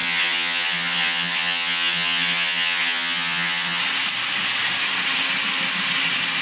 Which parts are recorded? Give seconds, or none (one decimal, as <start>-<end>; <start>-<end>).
3.8-6.4